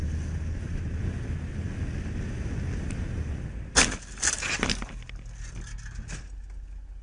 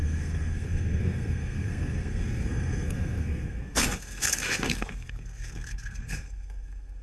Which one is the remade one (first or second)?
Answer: second